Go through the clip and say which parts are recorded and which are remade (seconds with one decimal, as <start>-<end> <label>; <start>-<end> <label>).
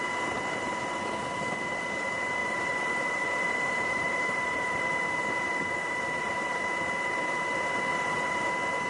0.0-2.4 recorded; 2.4-4.8 remade; 4.8-5.8 recorded; 5.8-6.6 remade; 6.6-7.9 recorded; 7.9-8.5 remade; 8.5-8.9 recorded